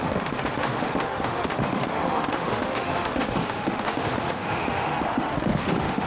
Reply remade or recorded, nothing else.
remade